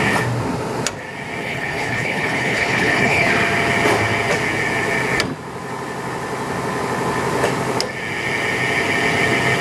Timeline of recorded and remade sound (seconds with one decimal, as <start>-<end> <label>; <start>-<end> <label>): 0.0-1.4 recorded; 1.4-3.3 remade; 3.3-9.6 recorded